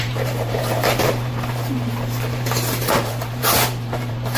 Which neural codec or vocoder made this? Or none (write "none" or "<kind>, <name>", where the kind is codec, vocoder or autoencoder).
vocoder, BigVGAN v2